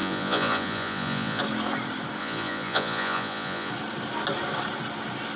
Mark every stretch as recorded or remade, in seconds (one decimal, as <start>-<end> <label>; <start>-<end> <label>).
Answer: 0.0-1.4 remade; 1.4-2.2 recorded; 2.2-3.7 remade; 3.7-5.4 recorded